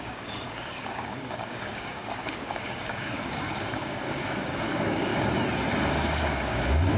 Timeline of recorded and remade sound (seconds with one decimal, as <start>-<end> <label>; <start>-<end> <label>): 0.0-5.1 remade; 5.1-5.9 recorded; 5.9-7.0 remade